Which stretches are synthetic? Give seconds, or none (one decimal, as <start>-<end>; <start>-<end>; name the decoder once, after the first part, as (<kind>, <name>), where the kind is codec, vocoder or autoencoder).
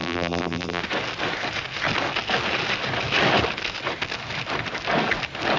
0.0-0.8 (vocoder, BigVGAN v2)